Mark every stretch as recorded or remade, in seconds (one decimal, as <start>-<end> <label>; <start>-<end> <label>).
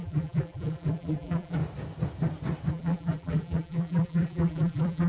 0.0-1.6 remade; 1.6-2.7 recorded; 2.7-5.1 remade